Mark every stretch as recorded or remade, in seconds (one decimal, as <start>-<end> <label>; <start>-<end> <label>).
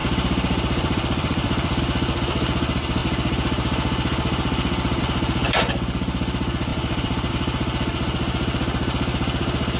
0.0-1.8 remade; 1.8-6.7 recorded; 6.7-7.3 remade; 7.3-9.8 recorded